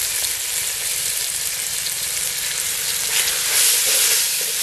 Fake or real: fake